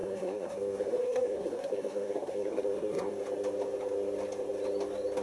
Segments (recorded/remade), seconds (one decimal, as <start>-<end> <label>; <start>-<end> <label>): 0.0-3.1 remade; 3.1-5.2 recorded